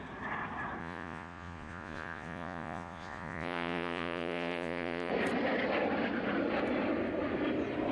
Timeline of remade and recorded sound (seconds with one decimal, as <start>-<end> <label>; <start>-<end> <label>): 0.0-0.8 recorded; 0.8-5.1 remade; 5.1-7.9 recorded